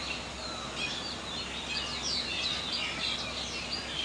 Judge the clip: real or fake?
real